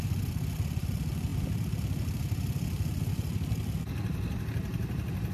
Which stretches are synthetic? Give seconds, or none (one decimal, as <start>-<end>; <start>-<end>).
none